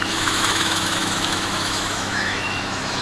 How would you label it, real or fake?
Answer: fake